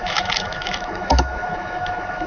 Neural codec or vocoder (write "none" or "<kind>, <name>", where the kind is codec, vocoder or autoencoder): autoencoder, DAC-VAE